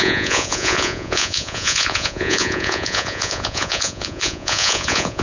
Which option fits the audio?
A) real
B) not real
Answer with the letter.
B